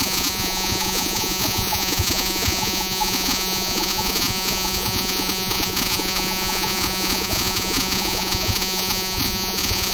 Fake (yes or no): yes